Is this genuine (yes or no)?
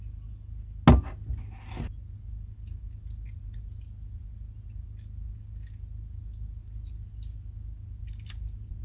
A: yes